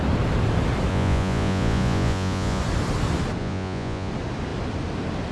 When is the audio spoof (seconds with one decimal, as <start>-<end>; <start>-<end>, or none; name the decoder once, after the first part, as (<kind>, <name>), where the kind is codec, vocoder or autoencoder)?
0.9-2.6 (vocoder, Vocos); 3.4-4.1